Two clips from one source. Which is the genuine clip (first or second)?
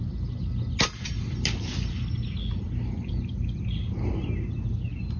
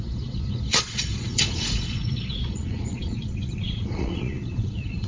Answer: first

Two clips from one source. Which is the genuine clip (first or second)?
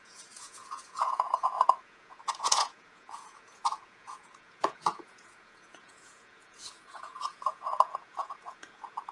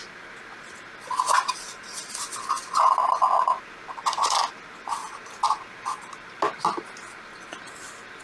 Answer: second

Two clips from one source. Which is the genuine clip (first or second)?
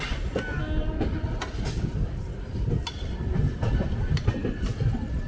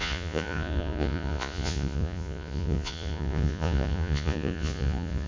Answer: first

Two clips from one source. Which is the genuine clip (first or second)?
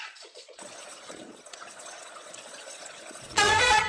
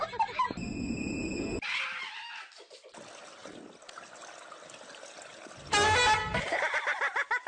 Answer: second